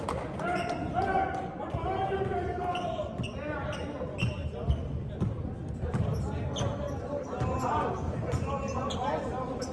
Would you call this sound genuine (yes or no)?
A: yes